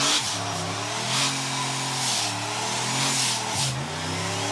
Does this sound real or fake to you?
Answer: real